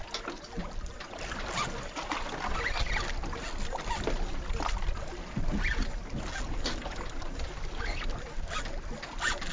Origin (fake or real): real